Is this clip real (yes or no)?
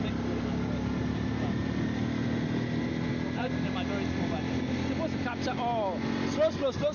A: yes